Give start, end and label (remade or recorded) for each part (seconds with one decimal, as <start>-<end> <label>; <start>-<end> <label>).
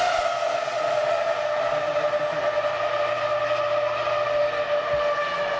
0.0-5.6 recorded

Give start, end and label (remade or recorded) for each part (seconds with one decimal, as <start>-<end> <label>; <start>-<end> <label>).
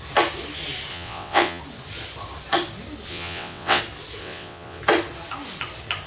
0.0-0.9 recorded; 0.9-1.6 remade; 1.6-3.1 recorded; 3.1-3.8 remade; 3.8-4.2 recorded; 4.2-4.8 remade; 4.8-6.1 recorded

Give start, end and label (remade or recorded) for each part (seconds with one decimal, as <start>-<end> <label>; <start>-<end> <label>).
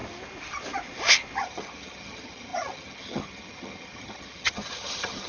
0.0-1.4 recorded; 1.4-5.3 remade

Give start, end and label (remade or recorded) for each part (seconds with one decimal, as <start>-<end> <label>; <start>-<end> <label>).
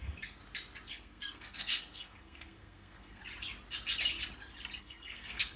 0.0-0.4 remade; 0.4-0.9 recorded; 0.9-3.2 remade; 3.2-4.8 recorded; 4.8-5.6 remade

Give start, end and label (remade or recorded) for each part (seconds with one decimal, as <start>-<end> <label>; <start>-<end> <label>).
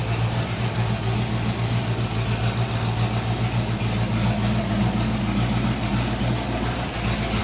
0.0-7.4 recorded